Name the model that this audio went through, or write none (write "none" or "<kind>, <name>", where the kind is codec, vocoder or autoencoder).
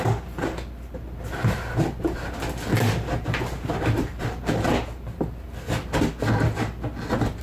none